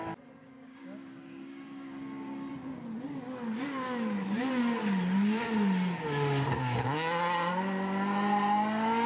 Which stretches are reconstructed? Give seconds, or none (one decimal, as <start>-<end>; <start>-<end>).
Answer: 0.4-2.5